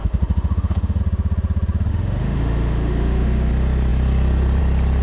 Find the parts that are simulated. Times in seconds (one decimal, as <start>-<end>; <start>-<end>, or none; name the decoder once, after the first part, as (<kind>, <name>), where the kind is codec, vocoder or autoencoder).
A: 0.0-1.0 (autoencoder, DAC-VAE); 1.9-3.5